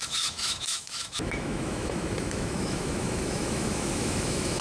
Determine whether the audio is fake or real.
fake